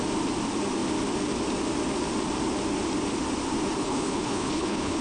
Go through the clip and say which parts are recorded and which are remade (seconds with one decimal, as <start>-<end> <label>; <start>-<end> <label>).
0.0-3.8 recorded; 3.8-5.0 remade